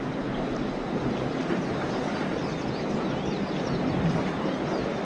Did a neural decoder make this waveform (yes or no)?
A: no